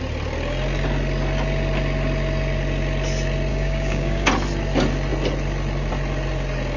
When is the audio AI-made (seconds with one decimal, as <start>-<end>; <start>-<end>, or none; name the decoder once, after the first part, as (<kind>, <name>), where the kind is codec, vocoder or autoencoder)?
3.5-4.3 (codec, DAC)